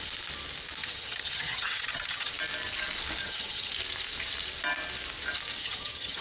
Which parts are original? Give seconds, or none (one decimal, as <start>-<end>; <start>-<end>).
0.0-0.8; 2.3-3.2; 3.7-5.6

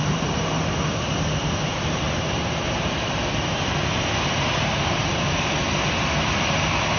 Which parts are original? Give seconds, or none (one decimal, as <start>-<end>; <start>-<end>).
5.6-6.3

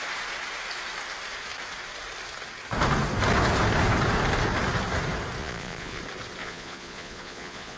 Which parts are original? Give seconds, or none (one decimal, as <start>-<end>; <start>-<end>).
0.0-5.4; 6.0-6.4

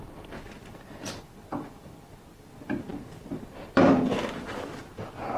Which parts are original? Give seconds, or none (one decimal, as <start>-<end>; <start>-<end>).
none

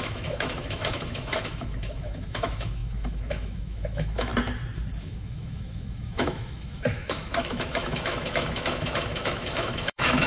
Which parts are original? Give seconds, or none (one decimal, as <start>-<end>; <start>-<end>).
4.3-5.0